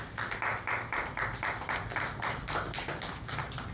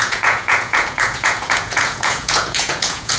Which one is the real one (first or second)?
first